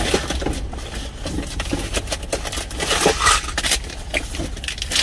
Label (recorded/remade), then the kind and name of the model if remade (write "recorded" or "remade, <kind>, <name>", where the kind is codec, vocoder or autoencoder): recorded